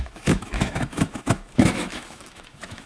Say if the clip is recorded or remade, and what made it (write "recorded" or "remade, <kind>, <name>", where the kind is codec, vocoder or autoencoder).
remade, autoencoder, DAC-VAE